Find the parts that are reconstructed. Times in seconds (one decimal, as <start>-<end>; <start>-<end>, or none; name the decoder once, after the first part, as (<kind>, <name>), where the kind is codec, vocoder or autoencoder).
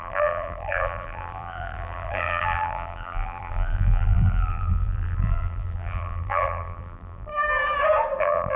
0.0-7.3 (vocoder, BigVGAN v2); 8.2-8.6